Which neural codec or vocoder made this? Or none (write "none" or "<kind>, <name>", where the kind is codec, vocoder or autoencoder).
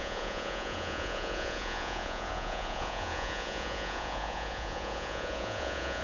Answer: vocoder, Vocos